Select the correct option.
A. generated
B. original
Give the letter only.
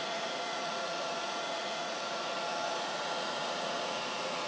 A